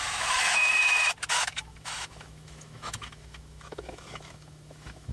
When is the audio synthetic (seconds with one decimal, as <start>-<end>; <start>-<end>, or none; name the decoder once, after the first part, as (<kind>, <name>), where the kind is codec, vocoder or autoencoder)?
0.0-0.6 (autoencoder, DAC-VAE); 1.3-5.1